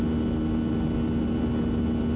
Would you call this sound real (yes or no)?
yes